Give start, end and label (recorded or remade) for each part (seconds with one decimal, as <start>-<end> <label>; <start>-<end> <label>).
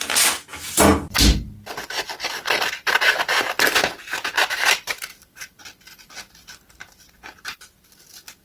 0.0-8.4 recorded